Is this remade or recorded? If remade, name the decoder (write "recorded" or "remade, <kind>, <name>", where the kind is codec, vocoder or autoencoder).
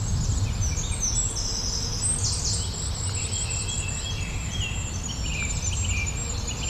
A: recorded